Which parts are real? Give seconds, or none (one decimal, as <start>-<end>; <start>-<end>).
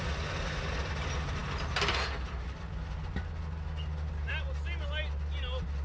0.0-5.8